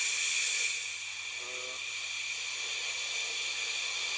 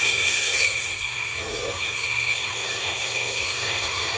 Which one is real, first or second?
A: first